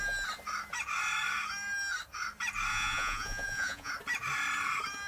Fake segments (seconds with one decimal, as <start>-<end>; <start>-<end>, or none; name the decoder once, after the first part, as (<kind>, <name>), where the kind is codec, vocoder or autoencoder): 2.7-3.9 (vocoder, Vocos)